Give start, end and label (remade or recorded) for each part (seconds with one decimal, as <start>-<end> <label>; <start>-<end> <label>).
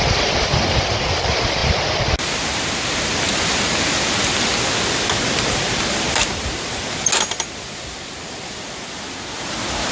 0.0-9.9 recorded